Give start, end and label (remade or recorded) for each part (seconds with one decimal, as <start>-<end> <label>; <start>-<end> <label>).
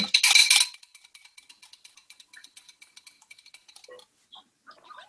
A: 0.0-5.1 recorded